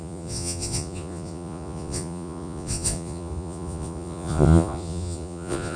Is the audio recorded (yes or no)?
no